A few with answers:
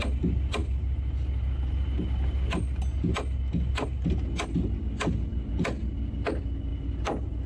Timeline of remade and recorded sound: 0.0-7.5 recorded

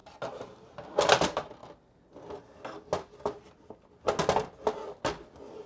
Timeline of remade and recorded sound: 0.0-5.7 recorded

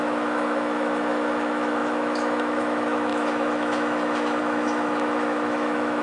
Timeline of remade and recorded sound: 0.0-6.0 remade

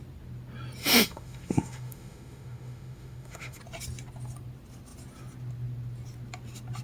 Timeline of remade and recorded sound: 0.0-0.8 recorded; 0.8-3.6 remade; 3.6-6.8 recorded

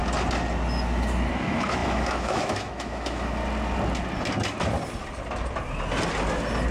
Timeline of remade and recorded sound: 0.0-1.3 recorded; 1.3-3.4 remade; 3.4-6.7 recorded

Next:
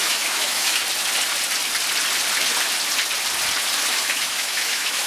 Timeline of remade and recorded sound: 0.0-0.8 remade; 0.8-3.9 recorded; 3.9-5.1 remade

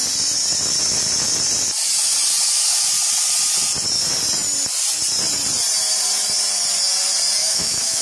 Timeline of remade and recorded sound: 0.0-7.4 recorded; 7.4-8.0 remade

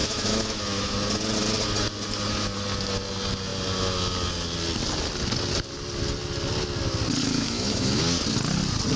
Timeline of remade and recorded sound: 0.0-0.9 remade; 0.9-7.2 recorded; 7.2-8.0 remade; 8.0-9.0 recorded